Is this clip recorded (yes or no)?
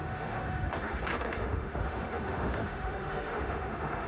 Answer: no